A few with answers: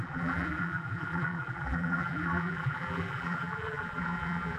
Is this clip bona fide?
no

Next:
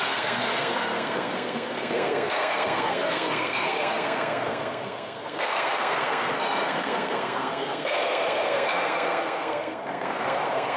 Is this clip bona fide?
no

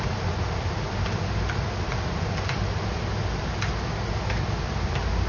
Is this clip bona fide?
yes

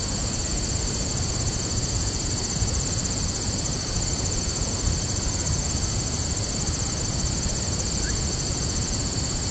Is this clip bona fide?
no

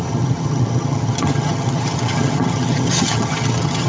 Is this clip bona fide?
no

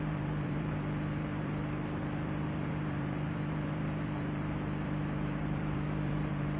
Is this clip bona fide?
no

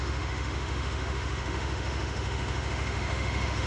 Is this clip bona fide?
no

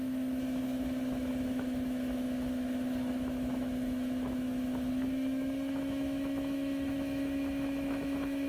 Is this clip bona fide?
no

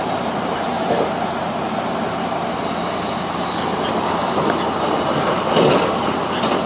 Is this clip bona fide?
yes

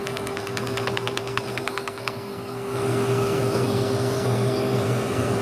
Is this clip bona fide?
no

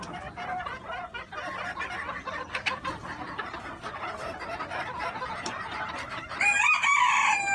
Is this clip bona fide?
no